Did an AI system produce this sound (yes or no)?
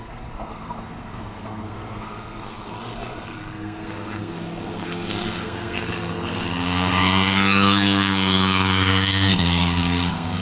yes